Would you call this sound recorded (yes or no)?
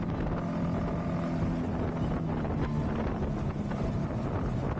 yes